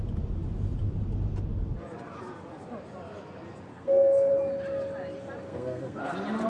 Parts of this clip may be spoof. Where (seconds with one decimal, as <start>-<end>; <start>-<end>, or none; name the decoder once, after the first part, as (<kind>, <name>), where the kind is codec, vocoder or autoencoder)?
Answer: 3.7-4.3 (codec, SNAC); 5.5-6.1